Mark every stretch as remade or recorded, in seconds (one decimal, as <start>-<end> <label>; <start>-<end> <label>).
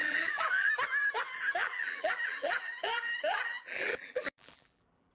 0.0-0.7 remade; 0.7-1.6 recorded; 1.6-5.1 remade